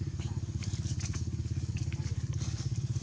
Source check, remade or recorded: remade